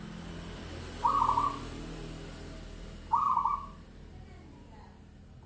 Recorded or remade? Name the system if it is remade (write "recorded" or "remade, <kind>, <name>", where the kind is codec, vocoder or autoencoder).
recorded